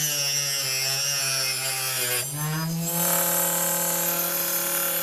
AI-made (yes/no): no